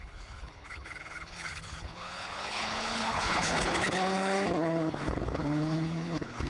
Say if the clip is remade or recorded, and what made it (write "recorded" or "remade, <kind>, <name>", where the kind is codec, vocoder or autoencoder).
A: remade, codec, HILCodec